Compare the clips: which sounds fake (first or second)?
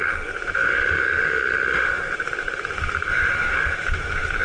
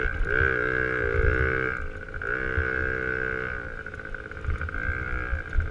first